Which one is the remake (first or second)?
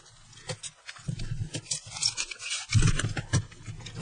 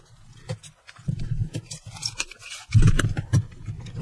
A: second